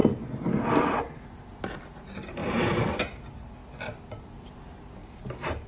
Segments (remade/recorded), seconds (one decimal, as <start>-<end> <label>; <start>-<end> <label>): 0.0-2.4 recorded; 2.4-3.0 remade; 3.0-5.0 recorded; 5.0-5.7 remade